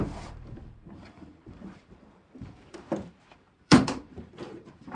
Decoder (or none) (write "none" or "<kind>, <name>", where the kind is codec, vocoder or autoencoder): vocoder, BigVGAN v2